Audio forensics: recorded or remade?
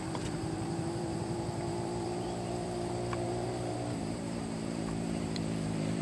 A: remade